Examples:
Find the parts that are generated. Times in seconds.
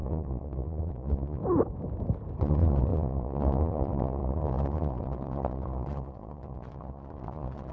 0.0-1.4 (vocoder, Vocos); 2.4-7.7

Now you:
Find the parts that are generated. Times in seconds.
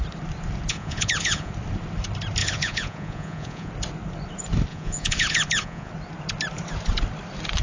0.7-1.5 (vocoder, Vocos); 2.4-3.7; 4.7-5.9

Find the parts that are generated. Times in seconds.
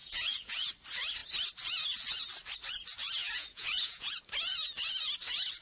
0.0-0.7 (vocoder, Vocos); 3.2-4.1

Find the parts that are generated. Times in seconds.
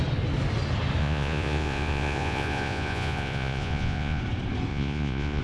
1.0-4.2 (vocoder, Vocos); 4.7-5.4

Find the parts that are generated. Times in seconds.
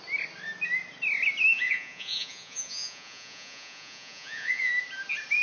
1.5-4.7 (vocoder, Vocos)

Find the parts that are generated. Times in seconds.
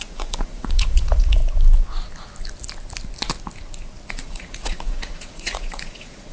0.0-1.4 (vocoder, Vocos); 4.1-6.3